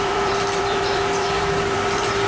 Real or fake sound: fake